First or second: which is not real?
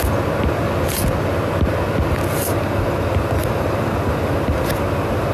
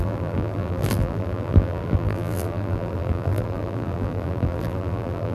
second